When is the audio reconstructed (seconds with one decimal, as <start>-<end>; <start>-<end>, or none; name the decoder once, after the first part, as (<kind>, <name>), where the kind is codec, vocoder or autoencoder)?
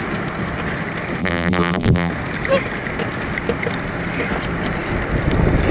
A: 1.2-2.1 (vocoder, BigVGAN v2)